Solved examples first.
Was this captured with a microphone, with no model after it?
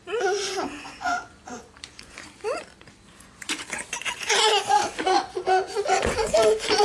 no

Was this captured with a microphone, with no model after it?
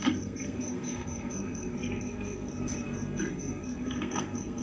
no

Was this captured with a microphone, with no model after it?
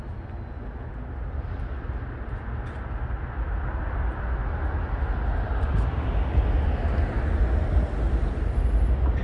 yes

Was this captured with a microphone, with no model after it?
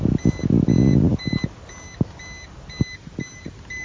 yes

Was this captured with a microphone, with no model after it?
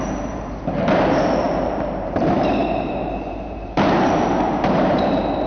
no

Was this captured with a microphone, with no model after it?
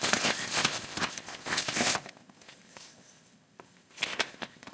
no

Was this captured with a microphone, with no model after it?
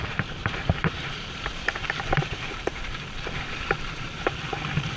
no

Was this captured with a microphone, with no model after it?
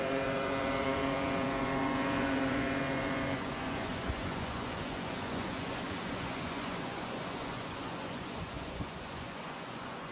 no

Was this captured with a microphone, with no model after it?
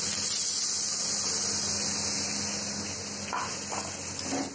yes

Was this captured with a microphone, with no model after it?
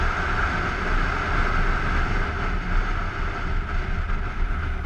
yes